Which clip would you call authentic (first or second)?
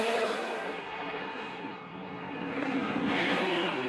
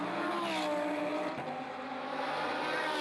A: second